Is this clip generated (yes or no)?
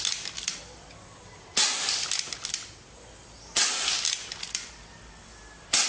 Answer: no